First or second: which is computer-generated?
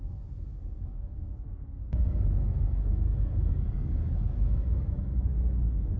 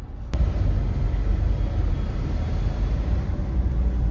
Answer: first